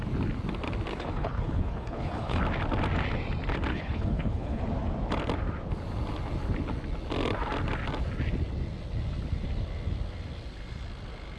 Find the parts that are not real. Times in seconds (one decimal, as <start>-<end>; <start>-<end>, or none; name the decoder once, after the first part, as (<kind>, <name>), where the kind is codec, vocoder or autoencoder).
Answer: 0.9-2.4 (codec, HILCodec); 3.7-4.6